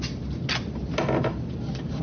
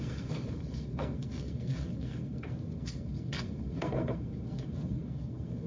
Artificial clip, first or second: second